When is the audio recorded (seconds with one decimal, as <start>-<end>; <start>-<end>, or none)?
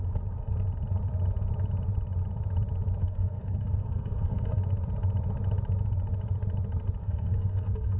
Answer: 0.0-3.0; 4.6-7.0